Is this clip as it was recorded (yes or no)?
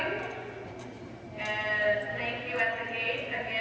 yes